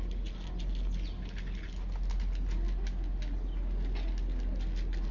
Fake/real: real